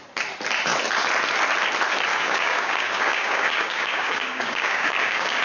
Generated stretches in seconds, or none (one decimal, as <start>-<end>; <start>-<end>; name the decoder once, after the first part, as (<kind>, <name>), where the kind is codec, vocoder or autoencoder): 2.1-5.4 (codec, DAC)